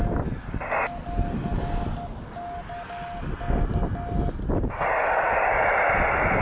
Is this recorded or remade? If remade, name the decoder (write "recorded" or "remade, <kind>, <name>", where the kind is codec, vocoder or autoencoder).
recorded